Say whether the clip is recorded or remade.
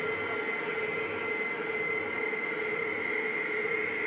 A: recorded